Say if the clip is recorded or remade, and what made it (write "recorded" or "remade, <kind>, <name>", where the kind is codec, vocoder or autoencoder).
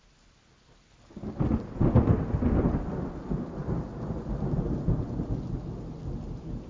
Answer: recorded